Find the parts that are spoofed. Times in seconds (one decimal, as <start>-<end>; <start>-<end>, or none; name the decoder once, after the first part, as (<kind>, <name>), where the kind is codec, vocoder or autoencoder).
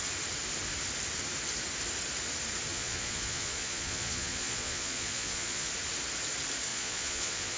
2.7-5.7 (vocoder, Vocos); 6.7-7.6